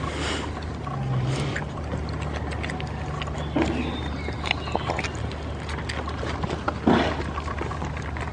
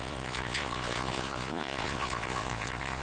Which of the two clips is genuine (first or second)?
first